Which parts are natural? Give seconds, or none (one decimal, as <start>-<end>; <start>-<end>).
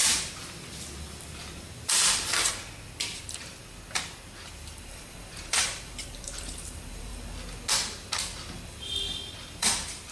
0.0-4.8; 7.1-9.6